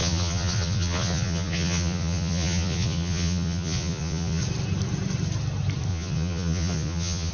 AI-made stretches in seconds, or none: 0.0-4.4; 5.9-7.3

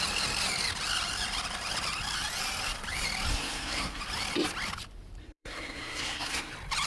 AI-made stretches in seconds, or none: 3.3-4.0; 5.2-6.5

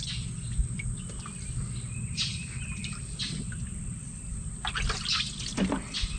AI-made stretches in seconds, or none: none

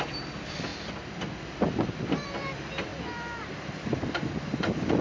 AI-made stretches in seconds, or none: 0.0-0.7; 1.5-2.9; 3.5-5.0

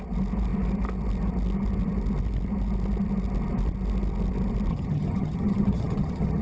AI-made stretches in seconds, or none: 4.7-6.4

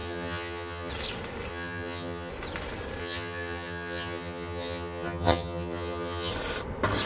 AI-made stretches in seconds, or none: 0.0-0.9; 1.5-2.3; 3.0-6.3

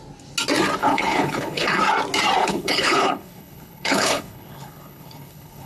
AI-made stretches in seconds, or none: 0.8-1.8; 2.4-5.7